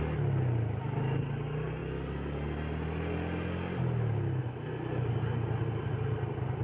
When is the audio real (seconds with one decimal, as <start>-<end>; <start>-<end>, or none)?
0.0-6.6